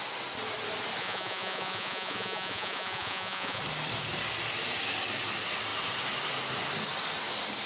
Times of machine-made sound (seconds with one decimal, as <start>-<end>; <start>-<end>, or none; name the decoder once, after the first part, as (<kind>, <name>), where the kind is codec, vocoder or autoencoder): 1.0-3.6 (vocoder, Vocos)